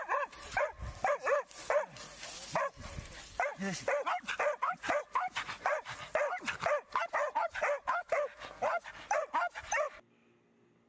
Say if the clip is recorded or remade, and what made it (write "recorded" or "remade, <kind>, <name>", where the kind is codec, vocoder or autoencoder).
recorded